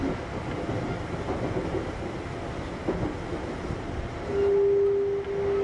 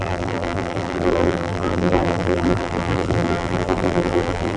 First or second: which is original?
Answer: first